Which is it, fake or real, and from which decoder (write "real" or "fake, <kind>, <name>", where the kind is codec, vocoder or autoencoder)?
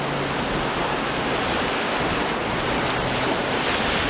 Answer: real